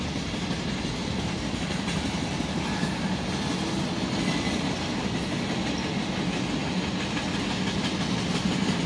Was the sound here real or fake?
real